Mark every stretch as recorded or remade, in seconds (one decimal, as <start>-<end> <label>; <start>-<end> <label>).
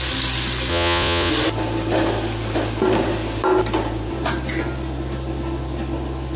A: 0.0-0.7 recorded; 0.7-1.3 remade; 1.3-6.4 recorded